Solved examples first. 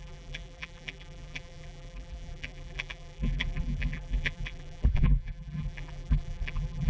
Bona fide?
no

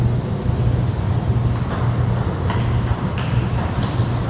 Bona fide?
yes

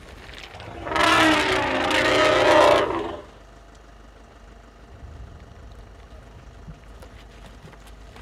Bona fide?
yes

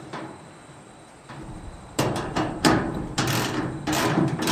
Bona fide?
no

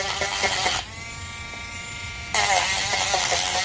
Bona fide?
yes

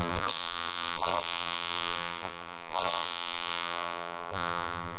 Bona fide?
no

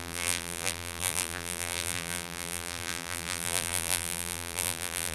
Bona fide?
no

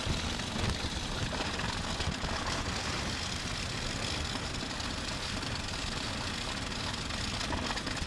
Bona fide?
yes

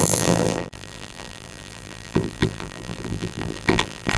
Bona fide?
no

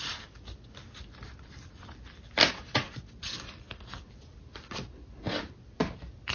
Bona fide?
no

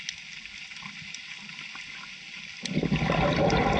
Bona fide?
yes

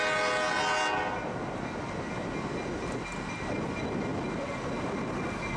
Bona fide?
yes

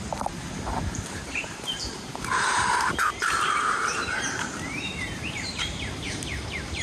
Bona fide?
no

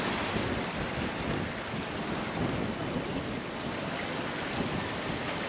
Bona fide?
yes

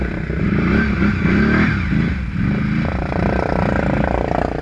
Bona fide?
yes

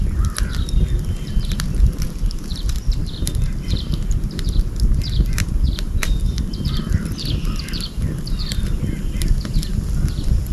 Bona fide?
no